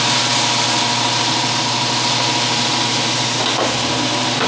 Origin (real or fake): real